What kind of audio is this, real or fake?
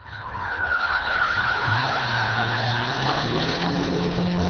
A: fake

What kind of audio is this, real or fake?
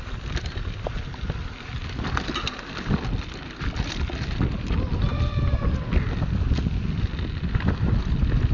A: real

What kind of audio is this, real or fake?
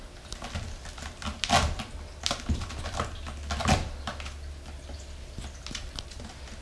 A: real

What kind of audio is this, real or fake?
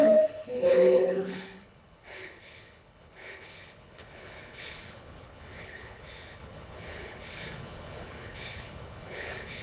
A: fake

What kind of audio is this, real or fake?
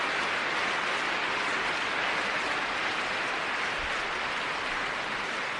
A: real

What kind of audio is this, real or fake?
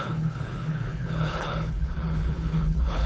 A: fake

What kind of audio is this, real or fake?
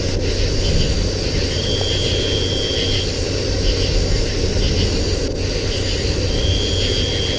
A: real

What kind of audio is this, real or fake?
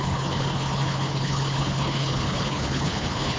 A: fake